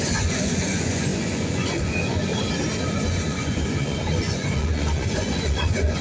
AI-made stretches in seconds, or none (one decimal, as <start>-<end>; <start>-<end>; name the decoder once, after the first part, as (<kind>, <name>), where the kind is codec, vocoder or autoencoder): 0.0-2.3 (vocoder, Vocos); 2.9-6.0